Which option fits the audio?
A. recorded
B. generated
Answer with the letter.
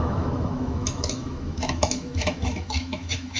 B